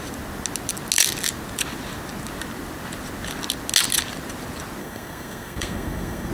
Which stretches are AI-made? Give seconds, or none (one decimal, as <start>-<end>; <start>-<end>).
4.8-6.3